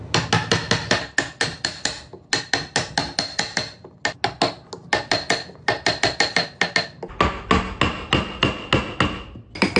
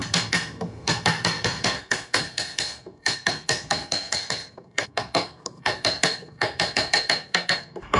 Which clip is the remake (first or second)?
second